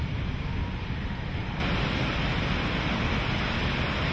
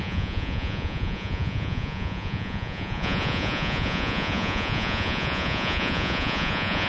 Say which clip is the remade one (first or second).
second